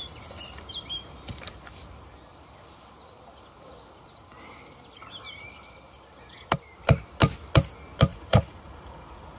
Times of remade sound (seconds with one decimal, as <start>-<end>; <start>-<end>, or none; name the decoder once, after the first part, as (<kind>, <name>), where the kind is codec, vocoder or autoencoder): 8.1-9.4 (vocoder, Vocos)